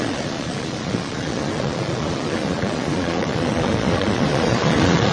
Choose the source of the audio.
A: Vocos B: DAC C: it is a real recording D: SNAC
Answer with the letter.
A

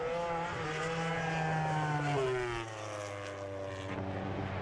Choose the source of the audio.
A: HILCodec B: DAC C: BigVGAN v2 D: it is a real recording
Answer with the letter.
D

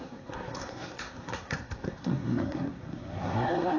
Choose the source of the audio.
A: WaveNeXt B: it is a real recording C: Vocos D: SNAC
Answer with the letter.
D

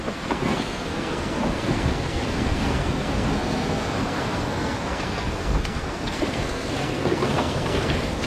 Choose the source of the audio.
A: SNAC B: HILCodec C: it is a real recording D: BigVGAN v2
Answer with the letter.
A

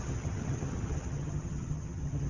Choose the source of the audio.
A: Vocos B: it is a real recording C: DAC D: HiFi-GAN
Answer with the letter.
D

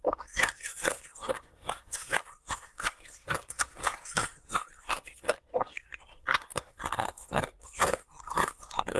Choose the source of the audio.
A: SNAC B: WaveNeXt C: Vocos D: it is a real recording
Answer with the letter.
A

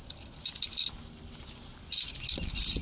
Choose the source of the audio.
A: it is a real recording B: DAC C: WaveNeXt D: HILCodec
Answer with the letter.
A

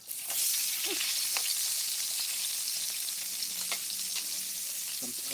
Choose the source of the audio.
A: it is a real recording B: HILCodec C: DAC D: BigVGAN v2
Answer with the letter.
A